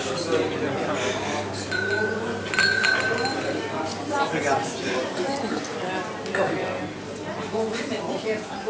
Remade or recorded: recorded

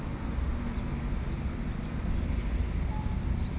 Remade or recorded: recorded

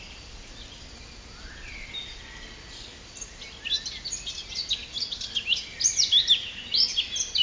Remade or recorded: recorded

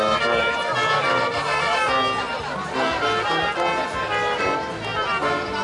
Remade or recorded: recorded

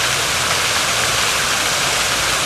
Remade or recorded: recorded